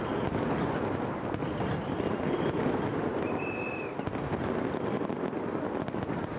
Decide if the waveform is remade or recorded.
recorded